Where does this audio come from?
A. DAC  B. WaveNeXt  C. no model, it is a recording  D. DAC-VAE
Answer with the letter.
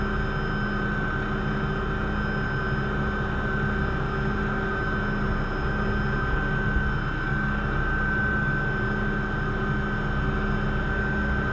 C